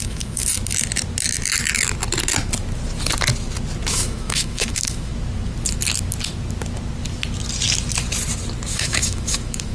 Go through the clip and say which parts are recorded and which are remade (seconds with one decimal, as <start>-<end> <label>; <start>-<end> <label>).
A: 0.0-0.4 remade; 0.4-3.9 recorded; 3.9-5.1 remade; 5.1-8.7 recorded; 8.7-9.7 remade